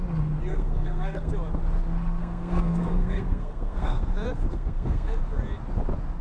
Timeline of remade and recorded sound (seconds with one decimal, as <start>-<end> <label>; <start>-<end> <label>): 0.0-0.5 recorded; 0.5-1.3 remade; 1.3-2.2 recorded; 2.2-5.2 remade; 5.2-6.2 recorded